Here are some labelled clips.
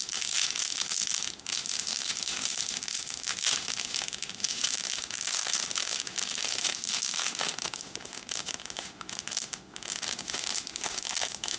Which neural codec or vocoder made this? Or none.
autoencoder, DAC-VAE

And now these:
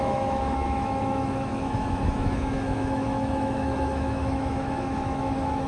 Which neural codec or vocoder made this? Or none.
autoencoder, DAC-VAE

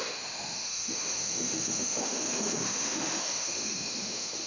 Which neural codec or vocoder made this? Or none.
autoencoder, DAC-VAE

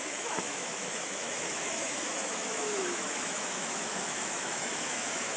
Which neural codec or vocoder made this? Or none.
autoencoder, DAC-VAE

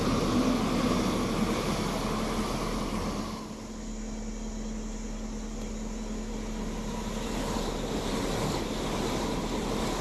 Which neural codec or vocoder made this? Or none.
none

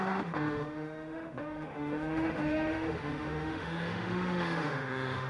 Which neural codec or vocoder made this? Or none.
autoencoder, DAC-VAE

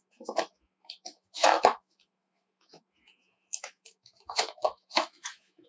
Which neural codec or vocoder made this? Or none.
autoencoder, DAC-VAE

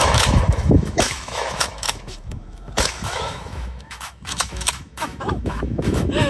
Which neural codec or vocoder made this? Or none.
autoencoder, DAC-VAE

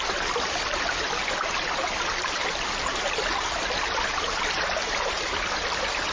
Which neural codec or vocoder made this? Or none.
none